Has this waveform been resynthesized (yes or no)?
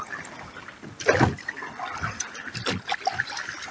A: yes